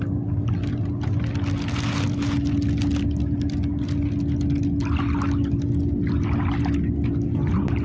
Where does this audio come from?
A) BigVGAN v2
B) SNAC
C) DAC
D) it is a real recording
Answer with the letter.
D